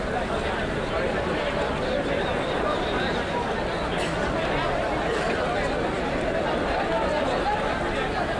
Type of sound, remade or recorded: recorded